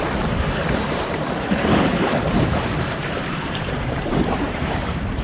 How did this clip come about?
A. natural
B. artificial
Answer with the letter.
B